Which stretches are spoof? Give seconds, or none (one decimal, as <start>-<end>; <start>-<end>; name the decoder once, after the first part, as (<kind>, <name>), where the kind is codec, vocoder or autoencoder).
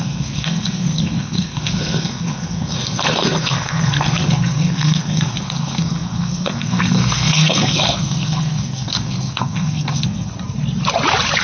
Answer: 0.0-10.3 (codec, SNAC)